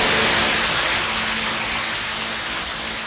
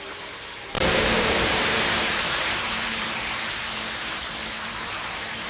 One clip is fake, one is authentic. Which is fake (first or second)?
second